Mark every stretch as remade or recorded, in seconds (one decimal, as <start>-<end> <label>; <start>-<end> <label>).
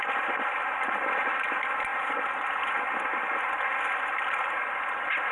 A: 0.0-5.3 recorded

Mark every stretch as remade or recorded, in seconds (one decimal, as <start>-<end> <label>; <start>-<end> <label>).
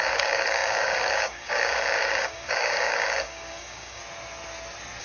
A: 0.0-4.0 remade; 4.0-5.0 recorded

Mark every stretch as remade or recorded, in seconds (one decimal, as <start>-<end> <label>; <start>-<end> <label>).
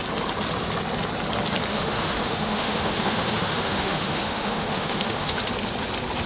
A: 0.0-1.7 recorded; 1.7-5.5 remade; 5.5-6.3 recorded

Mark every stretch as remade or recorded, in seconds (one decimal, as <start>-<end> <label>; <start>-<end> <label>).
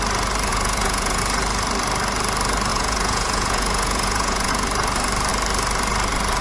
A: 0.0-0.5 recorded; 0.5-1.2 remade; 1.2-2.7 recorded; 2.7-4.5 remade; 4.5-6.4 recorded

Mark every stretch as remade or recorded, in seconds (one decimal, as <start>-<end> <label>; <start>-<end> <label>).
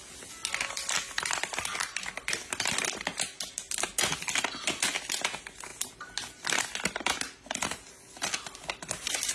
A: 0.0-9.3 recorded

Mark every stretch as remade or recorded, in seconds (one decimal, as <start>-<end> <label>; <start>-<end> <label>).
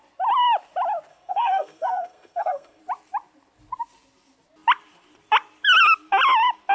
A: 0.0-1.1 recorded; 1.1-2.8 remade; 2.8-6.7 recorded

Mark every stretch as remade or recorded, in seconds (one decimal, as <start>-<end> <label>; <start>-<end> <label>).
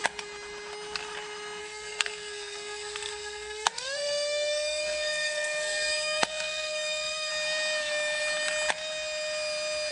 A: 0.0-1.6 recorded; 1.6-7.3 remade; 7.3-9.9 recorded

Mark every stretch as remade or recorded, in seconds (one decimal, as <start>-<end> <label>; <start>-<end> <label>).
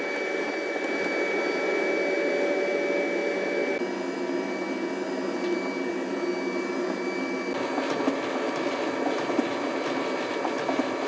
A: 0.0-11.1 recorded